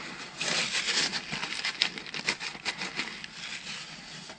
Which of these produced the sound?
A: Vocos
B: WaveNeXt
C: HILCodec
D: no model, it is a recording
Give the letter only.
D